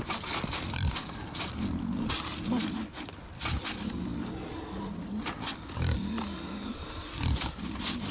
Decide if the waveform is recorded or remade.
recorded